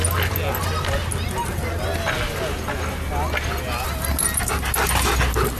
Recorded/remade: recorded